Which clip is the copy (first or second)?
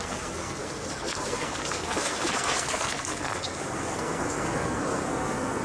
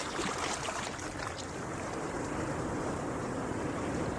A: first